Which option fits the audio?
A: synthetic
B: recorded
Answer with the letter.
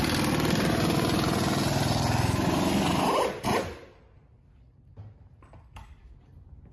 B